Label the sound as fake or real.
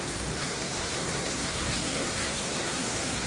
fake